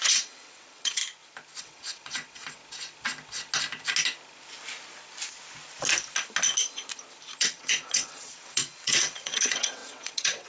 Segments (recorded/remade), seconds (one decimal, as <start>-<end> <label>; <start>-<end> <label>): 0.0-1.0 remade; 1.0-1.6 recorded; 1.6-2.6 remade; 2.6-7.4 recorded; 7.4-10.5 remade